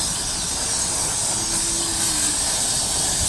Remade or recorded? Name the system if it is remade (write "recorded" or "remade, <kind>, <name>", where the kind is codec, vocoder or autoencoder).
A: recorded